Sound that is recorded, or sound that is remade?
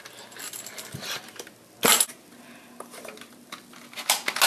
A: recorded